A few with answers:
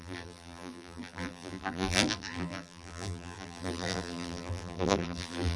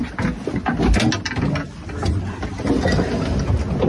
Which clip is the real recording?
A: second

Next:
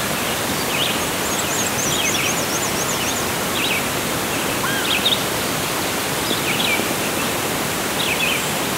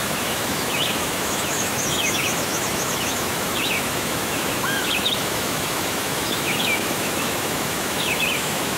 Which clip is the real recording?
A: first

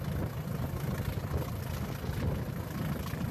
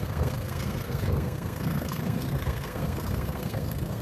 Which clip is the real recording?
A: first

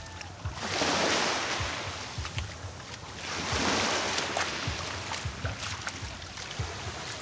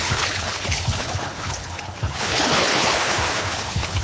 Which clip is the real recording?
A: first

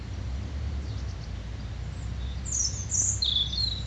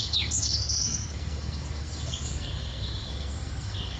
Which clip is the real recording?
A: first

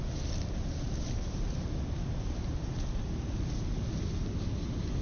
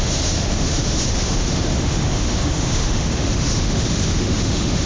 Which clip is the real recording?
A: first